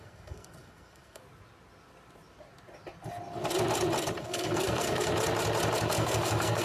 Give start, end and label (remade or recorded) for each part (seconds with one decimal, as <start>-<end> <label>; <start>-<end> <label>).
0.0-1.2 remade; 1.2-4.2 recorded; 4.2-5.1 remade; 5.1-5.9 recorded; 5.9-6.6 remade